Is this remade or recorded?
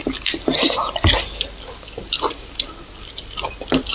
recorded